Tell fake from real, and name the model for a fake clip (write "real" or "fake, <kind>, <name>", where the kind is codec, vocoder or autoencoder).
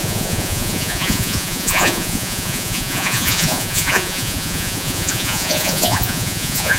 fake, vocoder, Vocos